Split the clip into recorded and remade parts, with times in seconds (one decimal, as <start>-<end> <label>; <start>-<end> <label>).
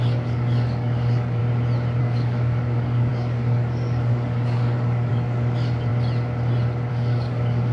0.0-1.4 remade; 1.4-2.0 recorded; 2.0-5.9 remade; 5.9-6.9 recorded; 6.9-7.7 remade